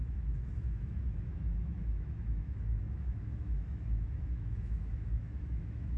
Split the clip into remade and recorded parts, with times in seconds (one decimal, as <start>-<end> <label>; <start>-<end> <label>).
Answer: 0.0-6.0 remade